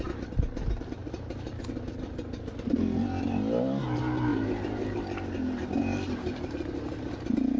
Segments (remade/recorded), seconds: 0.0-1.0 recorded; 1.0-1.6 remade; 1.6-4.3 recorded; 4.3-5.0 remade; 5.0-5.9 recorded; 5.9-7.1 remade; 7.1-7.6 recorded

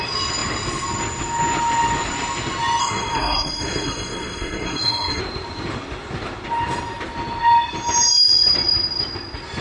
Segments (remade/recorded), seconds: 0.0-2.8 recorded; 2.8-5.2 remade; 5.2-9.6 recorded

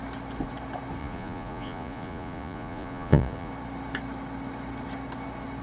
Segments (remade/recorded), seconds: 0.0-1.0 recorded; 1.0-3.5 remade; 3.5-5.6 recorded

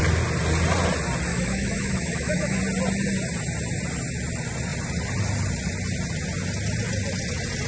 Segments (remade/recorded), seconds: 0.0-1.3 recorded; 1.3-2.6 remade; 2.6-7.7 recorded

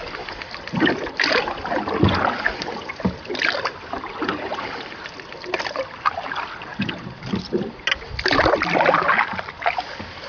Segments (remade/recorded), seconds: 0.0-10.3 recorded